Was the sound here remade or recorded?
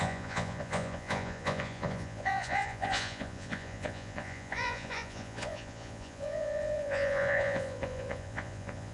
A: remade